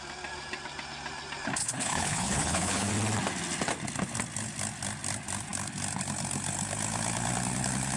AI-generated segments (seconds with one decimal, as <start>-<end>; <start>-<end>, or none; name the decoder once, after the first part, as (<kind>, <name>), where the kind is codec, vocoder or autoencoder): 1.6-2.9 (codec, HILCodec)